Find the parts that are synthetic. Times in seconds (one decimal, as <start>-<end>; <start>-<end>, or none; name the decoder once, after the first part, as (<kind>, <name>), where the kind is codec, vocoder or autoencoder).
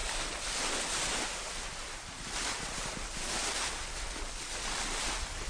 none